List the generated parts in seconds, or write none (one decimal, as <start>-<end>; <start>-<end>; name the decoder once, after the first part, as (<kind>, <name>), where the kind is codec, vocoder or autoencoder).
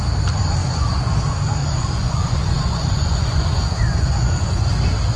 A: 0.6-1.1 (vocoder, Vocos); 1.6-4.7